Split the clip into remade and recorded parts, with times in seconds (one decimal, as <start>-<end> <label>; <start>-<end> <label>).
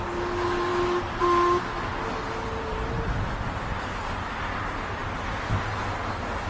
0.0-6.5 recorded